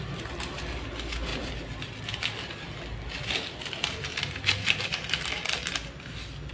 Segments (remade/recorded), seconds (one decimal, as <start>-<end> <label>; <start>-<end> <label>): 0.0-1.3 recorded; 1.3-2.0 remade; 2.0-4.1 recorded; 4.1-4.8 remade; 4.8-6.5 recorded